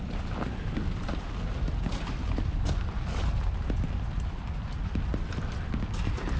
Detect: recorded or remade recorded